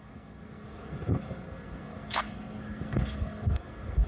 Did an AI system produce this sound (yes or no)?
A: yes